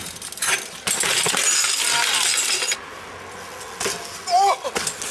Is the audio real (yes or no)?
yes